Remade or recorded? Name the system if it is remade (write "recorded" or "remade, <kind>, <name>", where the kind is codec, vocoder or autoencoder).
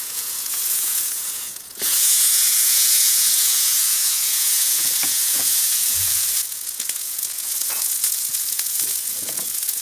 remade, vocoder, Vocos